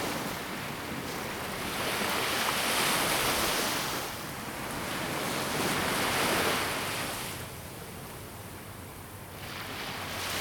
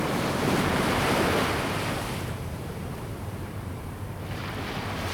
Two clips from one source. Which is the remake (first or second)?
second